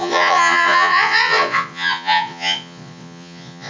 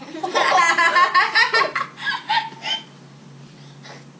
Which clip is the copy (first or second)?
first